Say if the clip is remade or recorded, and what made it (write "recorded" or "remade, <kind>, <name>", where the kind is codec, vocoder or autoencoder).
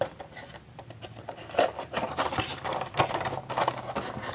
recorded